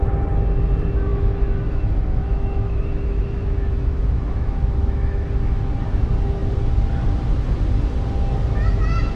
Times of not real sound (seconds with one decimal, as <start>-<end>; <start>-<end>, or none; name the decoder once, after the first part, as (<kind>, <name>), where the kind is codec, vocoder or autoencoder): 1.1-5.7 (autoencoder, DAC-VAE)